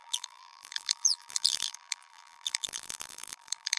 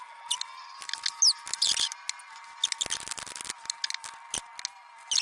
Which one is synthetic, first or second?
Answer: first